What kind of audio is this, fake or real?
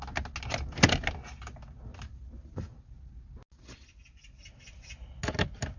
real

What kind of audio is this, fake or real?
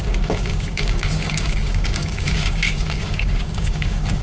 fake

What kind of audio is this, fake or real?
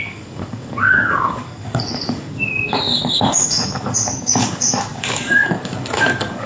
fake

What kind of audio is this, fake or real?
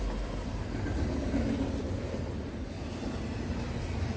real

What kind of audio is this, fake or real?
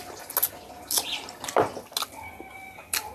real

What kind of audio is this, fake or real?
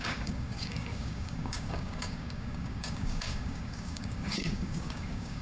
fake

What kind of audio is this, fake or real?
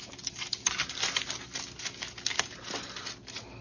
real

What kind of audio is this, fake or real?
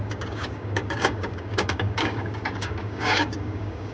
fake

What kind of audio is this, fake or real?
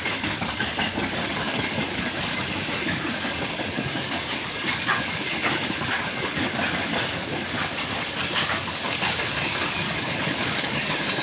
fake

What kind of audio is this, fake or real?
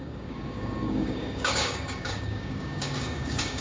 fake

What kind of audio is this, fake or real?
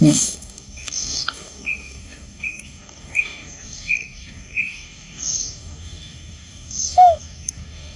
fake